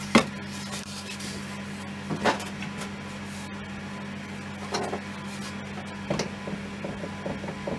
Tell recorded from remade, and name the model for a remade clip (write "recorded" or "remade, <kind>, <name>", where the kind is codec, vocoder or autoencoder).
recorded